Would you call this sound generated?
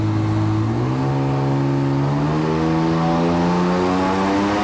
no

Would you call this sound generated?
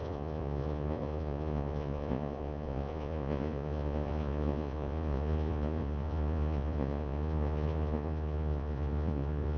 yes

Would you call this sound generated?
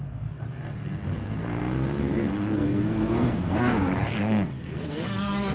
yes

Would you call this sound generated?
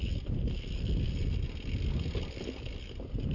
no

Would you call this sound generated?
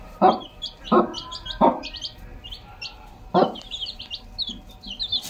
no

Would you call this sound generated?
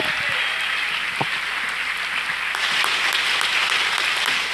no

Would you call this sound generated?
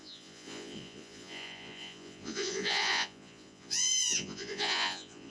yes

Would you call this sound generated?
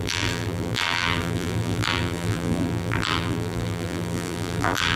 yes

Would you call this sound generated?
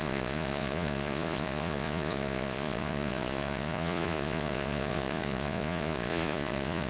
yes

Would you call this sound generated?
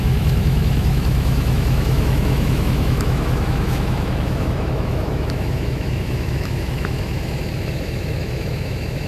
yes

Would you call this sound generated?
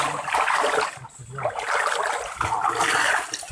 no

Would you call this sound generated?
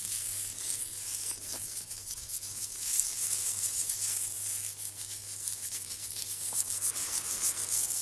yes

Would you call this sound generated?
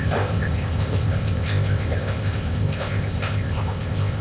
yes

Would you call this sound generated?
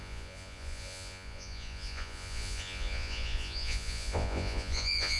yes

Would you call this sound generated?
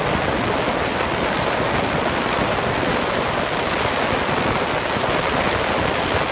no